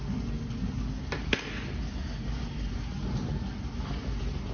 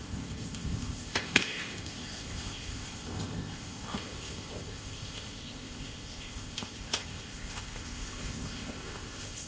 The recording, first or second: first